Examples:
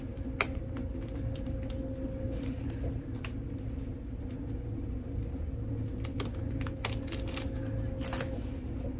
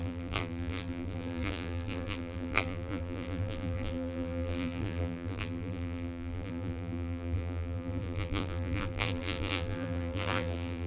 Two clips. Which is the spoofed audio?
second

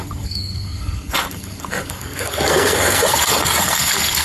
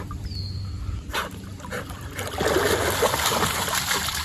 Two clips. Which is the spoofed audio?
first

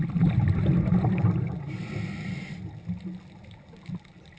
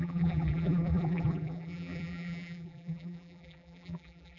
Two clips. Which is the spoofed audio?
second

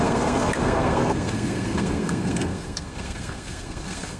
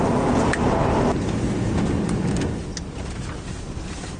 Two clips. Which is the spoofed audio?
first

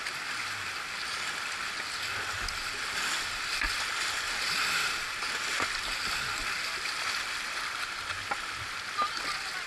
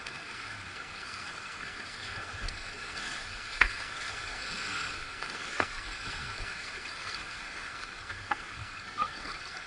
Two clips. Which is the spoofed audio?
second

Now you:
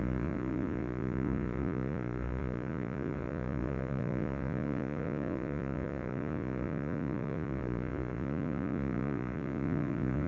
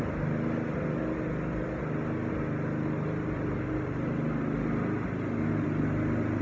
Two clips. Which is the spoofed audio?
first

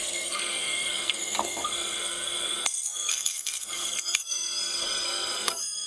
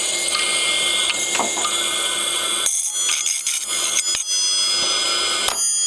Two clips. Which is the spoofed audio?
first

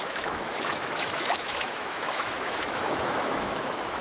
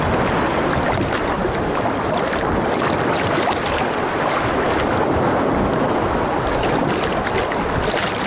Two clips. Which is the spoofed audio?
first